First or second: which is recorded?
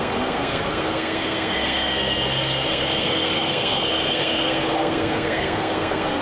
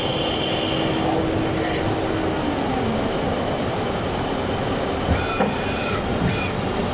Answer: second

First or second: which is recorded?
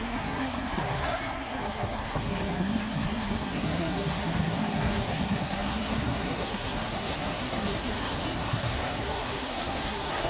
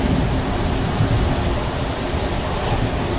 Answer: second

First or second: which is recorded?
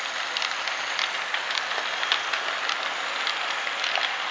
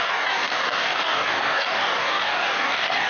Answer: first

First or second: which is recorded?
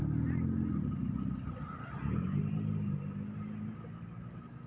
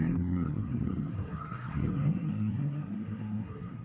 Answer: first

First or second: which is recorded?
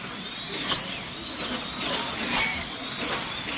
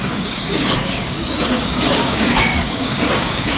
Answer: first